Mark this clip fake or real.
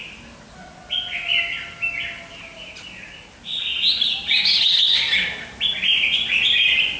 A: real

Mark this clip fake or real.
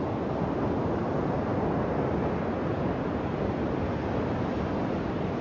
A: real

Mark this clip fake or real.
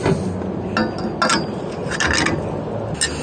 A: real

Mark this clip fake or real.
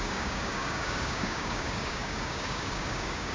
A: fake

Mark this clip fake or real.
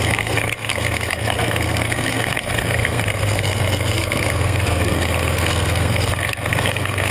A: fake